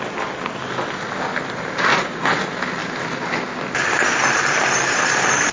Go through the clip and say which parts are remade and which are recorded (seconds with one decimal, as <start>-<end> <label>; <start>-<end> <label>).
0.0-1.9 recorded; 1.9-2.4 remade; 2.4-5.5 recorded